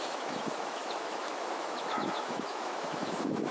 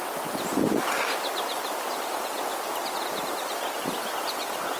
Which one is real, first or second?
second